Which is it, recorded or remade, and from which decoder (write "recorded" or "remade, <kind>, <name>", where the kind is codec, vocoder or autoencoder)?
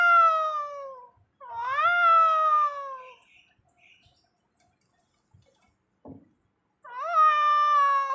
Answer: recorded